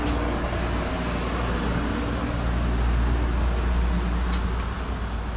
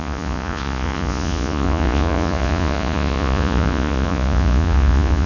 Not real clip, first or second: second